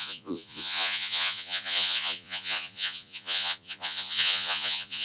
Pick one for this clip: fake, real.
fake